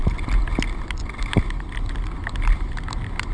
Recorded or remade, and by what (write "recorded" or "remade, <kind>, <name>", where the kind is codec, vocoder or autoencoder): recorded